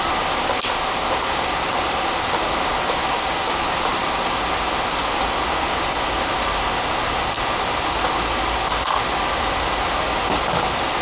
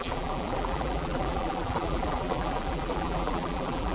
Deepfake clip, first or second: second